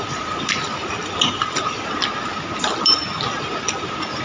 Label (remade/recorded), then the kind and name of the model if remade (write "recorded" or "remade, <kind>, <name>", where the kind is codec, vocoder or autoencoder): recorded